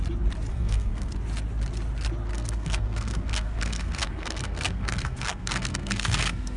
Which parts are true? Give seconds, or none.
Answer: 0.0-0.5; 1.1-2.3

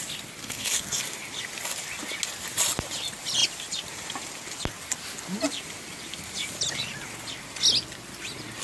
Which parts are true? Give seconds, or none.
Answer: 0.0-0.4; 1.0-8.6

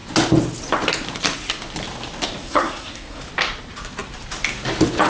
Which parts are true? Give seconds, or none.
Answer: 0.0-2.4; 3.2-5.1

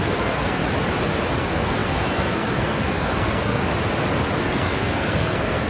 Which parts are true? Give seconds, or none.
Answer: 0.6-1.4; 3.6-4.4

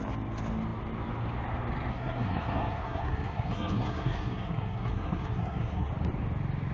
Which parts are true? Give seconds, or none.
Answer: 0.0-1.9; 5.9-6.7

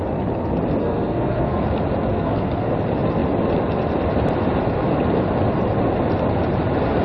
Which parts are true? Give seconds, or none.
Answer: 0.0-0.8; 1.6-2.1; 2.7-7.0

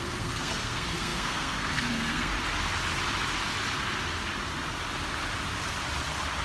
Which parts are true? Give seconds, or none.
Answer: 2.3-6.4